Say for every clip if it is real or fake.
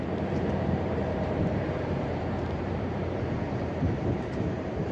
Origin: fake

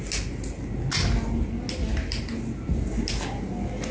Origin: real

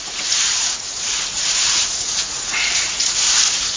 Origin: fake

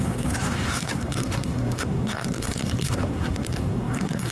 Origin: fake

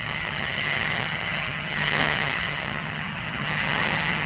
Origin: fake